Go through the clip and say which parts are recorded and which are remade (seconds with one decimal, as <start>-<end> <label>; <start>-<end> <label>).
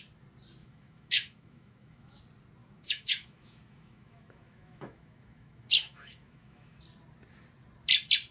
0.0-0.6 recorded; 0.6-2.2 remade; 2.2-2.6 recorded; 2.6-6.8 remade; 6.8-8.3 recorded